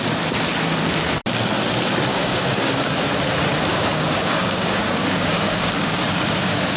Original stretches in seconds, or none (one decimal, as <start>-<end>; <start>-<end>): 0.0-2.1; 3.1-3.7